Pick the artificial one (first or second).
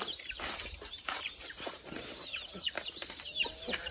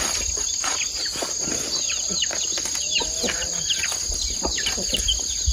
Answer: first